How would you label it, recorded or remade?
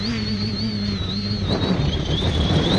remade